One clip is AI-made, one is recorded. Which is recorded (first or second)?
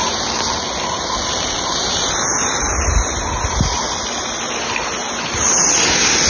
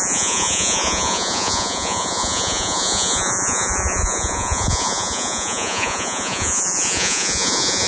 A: first